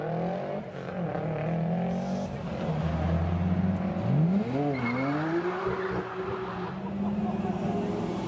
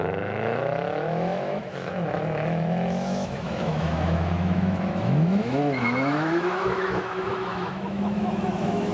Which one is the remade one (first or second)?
second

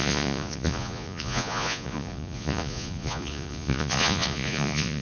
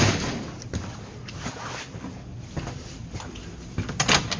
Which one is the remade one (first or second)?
first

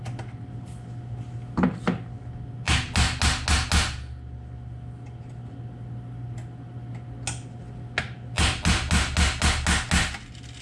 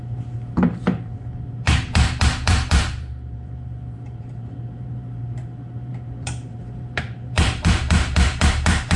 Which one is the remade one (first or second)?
second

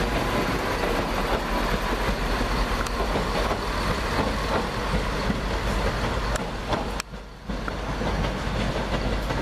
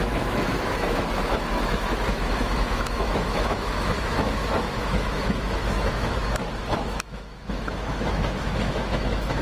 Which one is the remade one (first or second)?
second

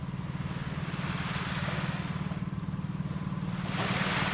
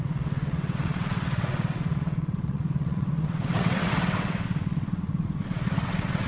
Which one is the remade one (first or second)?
second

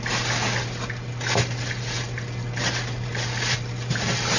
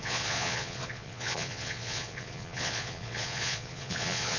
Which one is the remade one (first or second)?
second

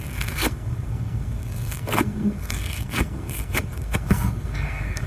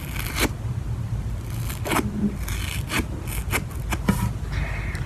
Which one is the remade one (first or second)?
first